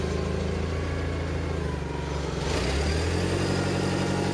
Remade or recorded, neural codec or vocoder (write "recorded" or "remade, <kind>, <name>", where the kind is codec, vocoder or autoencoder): recorded